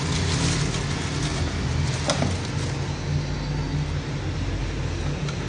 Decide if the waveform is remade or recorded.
recorded